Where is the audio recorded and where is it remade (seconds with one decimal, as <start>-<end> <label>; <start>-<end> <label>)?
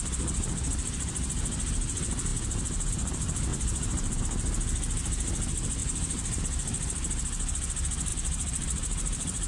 0.0-3.5 recorded; 3.5-4.2 remade; 4.2-5.8 recorded; 5.8-6.4 remade; 6.4-8.1 recorded; 8.1-9.5 remade